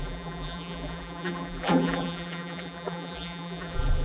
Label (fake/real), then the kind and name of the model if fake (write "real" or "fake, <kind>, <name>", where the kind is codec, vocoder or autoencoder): fake, vocoder, BigVGAN v2